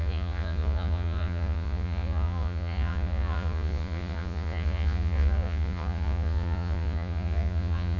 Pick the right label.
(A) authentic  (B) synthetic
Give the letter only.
B